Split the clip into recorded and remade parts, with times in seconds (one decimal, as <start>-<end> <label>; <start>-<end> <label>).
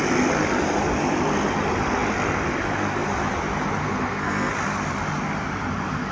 0.0-3.8 recorded; 3.8-4.5 remade; 4.5-6.1 recorded